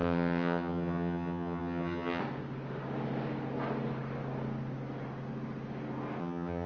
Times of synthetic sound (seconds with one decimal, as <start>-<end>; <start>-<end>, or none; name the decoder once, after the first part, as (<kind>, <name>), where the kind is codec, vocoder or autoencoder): 0.0-2.2 (vocoder, HiFi-GAN); 6.2-6.7